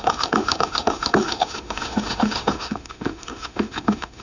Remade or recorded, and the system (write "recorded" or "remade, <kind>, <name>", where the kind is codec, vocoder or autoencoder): remade, autoencoder, DAC-VAE